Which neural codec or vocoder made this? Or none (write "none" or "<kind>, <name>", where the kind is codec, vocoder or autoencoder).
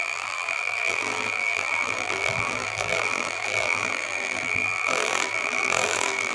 vocoder, BigVGAN v2